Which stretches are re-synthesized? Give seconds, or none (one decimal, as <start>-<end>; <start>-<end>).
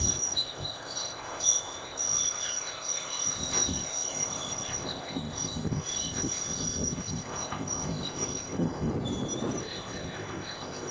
0.0-8.9; 9.6-10.9